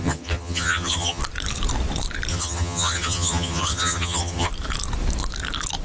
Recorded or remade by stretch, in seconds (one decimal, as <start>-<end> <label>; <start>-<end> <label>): 0.0-1.2 remade; 1.2-2.3 recorded; 2.3-4.5 remade; 4.5-5.8 recorded